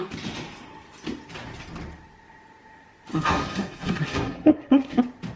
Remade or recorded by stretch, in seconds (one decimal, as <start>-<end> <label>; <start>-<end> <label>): 0.0-3.1 recorded; 3.1-5.0 remade; 5.0-5.4 recorded